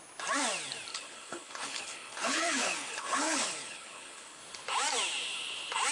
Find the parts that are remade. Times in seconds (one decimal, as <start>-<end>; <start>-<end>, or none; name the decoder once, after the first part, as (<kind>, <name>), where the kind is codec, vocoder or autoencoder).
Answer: 0.9-4.4 (codec, HILCodec)